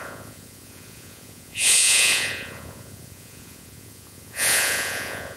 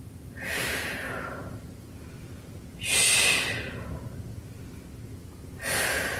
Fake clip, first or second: first